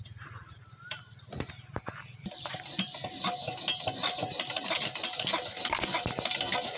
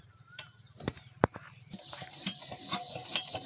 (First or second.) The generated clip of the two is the second